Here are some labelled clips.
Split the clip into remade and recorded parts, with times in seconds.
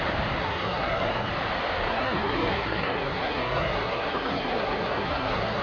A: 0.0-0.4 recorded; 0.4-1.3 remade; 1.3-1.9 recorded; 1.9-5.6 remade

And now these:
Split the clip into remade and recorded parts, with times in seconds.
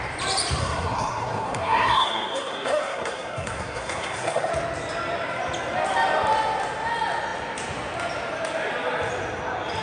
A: 0.0-0.6 recorded; 0.6-4.5 remade; 4.5-9.8 recorded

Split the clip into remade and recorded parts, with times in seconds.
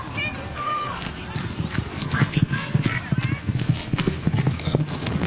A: 0.0-0.5 recorded; 0.5-1.1 remade; 1.1-1.9 recorded; 1.9-3.0 remade; 3.0-3.4 recorded; 3.4-5.3 remade